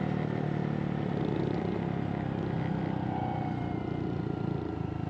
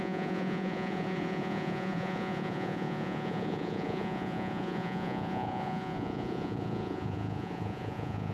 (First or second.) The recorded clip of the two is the first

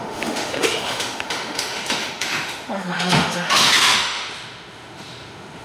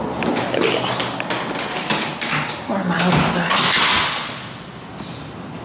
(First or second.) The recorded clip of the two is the second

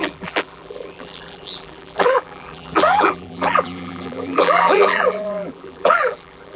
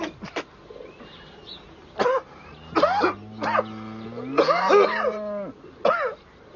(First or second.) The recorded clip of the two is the second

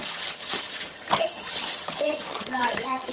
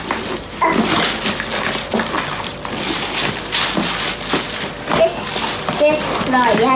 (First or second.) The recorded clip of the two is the second